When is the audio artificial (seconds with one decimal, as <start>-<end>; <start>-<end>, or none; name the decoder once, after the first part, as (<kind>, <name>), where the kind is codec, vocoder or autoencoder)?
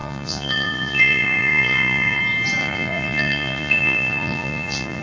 0.0-2.2 (vocoder, Vocos); 2.6-5.0